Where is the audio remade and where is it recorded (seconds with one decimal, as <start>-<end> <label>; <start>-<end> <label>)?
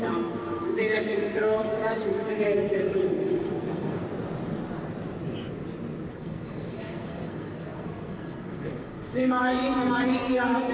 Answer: 0.0-4.0 remade; 4.0-6.1 recorded; 6.1-10.7 remade